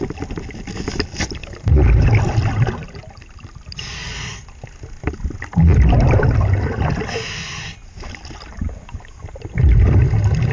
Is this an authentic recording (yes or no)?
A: yes